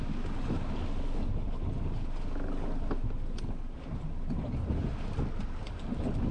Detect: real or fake real